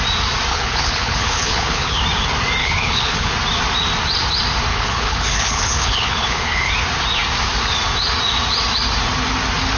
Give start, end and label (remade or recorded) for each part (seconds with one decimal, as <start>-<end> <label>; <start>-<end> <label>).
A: 0.0-0.5 recorded; 0.5-2.0 remade; 2.0-2.6 recorded; 2.6-3.3 remade; 3.3-4.7 recorded; 4.7-6.7 remade; 6.7-9.8 recorded